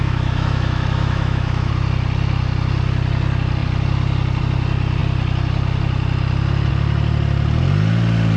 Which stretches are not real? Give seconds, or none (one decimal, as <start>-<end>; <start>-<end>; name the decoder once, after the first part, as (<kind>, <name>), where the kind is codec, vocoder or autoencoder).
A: 0.0-1.7 (autoencoder, DAC-VAE)